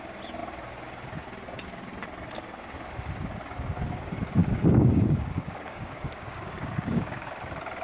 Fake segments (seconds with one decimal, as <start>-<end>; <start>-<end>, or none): 4.4-7.3